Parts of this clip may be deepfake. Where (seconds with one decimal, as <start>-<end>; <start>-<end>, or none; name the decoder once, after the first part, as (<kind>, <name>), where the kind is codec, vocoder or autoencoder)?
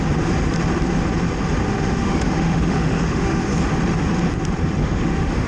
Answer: 1.7-3.4 (autoencoder, DAC-VAE); 4.8-5.5